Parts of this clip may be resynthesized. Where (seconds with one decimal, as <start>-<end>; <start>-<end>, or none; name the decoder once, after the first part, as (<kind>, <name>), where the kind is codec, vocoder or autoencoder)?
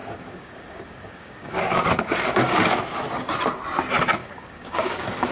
0.0-2.7 (codec, DAC); 4.2-5.3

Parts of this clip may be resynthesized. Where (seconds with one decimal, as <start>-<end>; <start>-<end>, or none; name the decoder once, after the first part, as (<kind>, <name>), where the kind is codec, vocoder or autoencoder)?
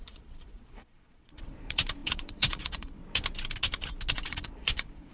0.0-3.0 (vocoder, Vocos); 4.1-5.1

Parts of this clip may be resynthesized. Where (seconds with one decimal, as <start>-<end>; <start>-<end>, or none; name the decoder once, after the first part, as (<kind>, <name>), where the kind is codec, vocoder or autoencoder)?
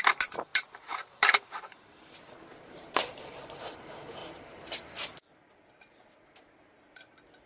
0.5-2.0 (vocoder, BigVGAN v2); 2.5-3.8; 4.2-4.8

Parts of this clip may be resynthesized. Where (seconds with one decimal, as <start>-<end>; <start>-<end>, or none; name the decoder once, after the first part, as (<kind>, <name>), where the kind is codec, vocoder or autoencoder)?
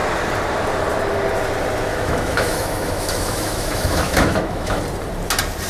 1.9-4.8 (autoencoder, DAC-VAE)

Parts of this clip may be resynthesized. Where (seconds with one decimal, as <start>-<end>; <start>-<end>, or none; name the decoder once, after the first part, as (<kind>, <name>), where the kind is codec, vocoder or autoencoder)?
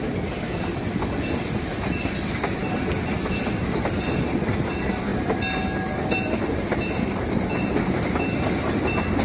none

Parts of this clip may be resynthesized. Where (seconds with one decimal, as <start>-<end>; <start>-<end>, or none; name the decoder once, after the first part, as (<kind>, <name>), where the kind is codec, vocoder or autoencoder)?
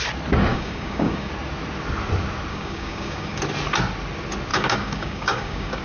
0.5-1.3 (codec, DAC); 2.5-3.4; 4.5-5.8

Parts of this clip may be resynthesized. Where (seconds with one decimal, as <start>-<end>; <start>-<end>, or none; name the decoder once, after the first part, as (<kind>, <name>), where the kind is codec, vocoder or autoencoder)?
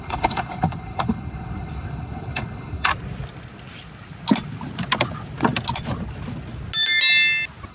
0.0-2.9 (codec, HILCodec)